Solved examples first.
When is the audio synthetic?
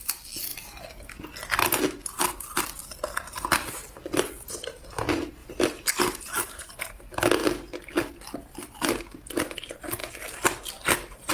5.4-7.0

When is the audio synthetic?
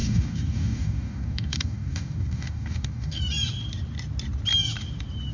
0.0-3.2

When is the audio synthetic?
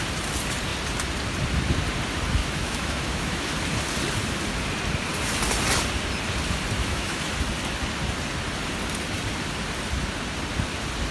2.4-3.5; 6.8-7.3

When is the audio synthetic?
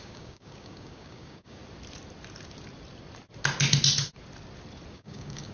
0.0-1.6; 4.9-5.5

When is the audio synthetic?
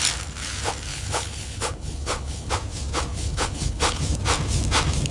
0.9-2.5; 3.1-4.0